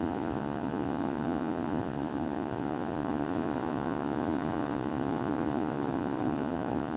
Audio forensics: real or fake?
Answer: fake